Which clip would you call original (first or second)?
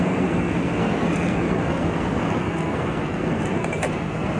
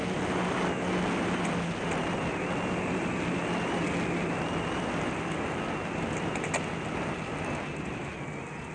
second